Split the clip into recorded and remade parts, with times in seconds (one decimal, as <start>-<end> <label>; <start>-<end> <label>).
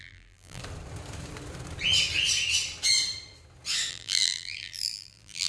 0.0-0.6 remade; 0.6-3.9 recorded; 3.9-5.5 remade